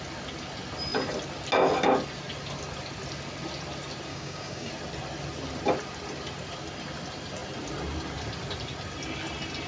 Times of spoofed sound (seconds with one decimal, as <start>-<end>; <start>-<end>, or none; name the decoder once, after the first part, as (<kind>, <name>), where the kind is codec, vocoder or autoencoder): 4.1-4.7 (codec, DAC)